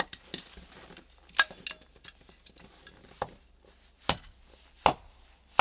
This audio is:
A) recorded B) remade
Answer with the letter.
A